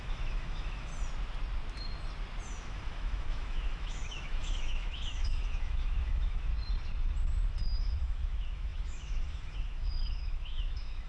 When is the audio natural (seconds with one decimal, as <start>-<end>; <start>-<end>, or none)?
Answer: 0.9-2.6; 6.5-7.8